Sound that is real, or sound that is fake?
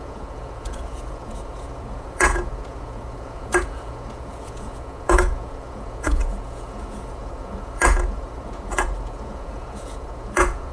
fake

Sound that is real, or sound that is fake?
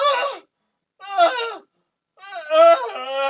real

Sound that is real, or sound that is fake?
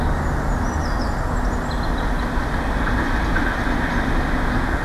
real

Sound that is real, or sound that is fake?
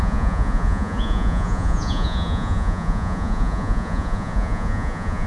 fake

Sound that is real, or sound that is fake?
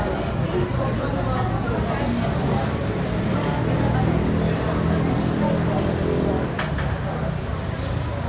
real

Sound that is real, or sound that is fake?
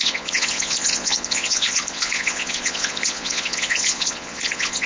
fake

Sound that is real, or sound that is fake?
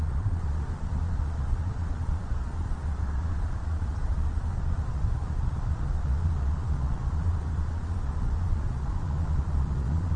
fake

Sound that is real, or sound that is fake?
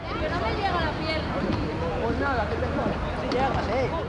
real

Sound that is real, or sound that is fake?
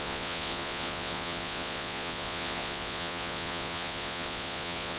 fake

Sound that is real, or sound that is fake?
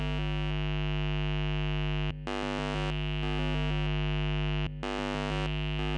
real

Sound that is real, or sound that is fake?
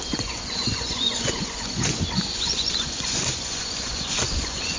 fake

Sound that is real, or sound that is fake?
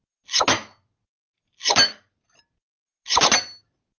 real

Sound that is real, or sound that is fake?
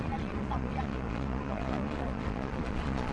fake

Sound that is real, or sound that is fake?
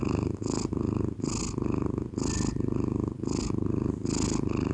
real